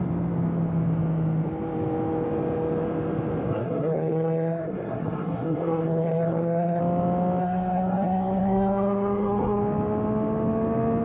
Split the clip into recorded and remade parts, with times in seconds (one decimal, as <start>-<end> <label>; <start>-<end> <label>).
0.0-3.5 recorded; 3.5-6.8 remade; 6.8-7.4 recorded; 7.4-9.6 remade; 9.6-11.0 recorded